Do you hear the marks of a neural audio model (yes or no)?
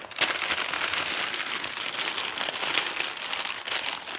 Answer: no